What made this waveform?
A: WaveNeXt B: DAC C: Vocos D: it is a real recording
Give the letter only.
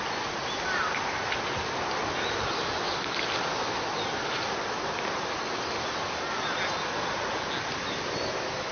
D